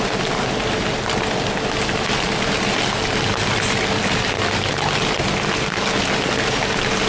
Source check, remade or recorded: recorded